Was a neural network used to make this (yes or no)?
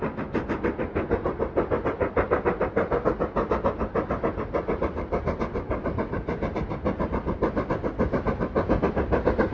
no